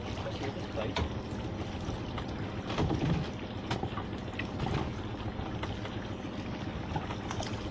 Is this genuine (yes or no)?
yes